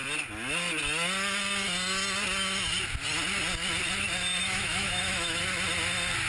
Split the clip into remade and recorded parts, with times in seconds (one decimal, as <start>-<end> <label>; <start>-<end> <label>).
0.0-4.4 recorded; 4.4-5.4 remade; 5.4-6.3 recorded